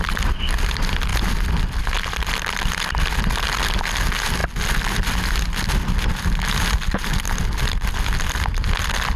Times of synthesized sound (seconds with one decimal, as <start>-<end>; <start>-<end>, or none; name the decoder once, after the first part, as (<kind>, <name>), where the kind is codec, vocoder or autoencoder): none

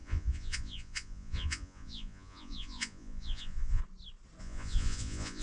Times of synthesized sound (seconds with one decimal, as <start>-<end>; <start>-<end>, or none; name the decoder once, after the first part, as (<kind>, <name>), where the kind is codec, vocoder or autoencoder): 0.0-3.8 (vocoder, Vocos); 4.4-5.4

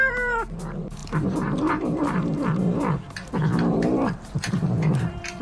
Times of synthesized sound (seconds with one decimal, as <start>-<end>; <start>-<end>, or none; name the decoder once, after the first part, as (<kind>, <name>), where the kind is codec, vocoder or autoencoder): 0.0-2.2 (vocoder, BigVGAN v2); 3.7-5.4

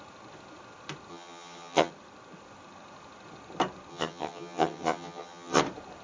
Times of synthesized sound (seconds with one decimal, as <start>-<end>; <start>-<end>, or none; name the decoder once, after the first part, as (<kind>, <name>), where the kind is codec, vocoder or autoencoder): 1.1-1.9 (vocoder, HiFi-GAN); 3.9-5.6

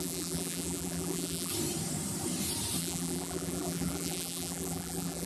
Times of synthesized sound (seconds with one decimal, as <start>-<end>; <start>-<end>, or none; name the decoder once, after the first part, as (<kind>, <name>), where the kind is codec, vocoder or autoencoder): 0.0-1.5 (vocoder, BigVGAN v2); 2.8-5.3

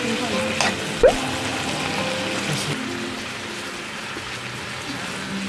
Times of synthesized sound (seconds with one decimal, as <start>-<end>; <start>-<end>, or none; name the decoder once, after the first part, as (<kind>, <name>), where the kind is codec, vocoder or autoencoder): none